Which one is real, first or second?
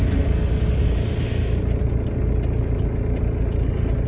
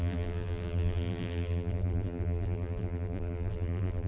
first